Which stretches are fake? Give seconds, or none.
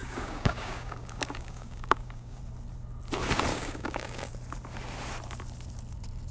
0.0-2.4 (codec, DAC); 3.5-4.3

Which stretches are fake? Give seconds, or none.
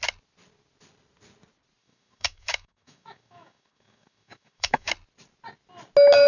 1.8-4.9 (autoencoder, DAC-VAE)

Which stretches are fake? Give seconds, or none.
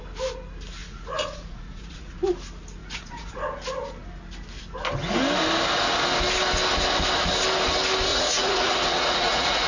0.8-2.2 (vocoder, Vocos); 2.8-3.4; 8.1-9.7